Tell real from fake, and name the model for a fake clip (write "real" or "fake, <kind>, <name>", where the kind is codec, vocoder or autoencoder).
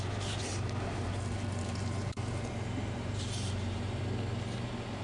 fake, vocoder, BigVGAN v2